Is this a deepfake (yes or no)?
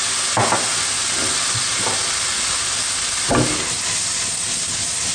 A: no